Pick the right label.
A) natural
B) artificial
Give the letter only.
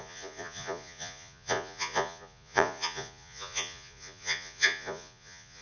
B